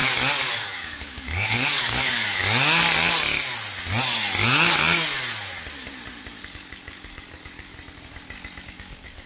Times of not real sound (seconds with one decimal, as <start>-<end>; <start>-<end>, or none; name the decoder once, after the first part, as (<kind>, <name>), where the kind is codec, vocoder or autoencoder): 0.5-2.4 (codec, DAC); 6.4-7.7; 8.7-9.3